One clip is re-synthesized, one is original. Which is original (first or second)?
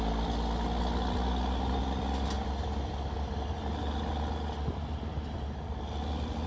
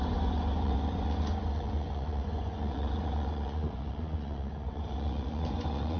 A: first